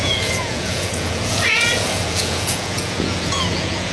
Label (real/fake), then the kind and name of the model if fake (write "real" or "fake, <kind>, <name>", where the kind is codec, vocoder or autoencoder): fake, vocoder, Vocos